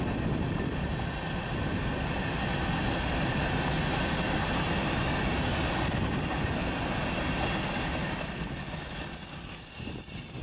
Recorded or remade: recorded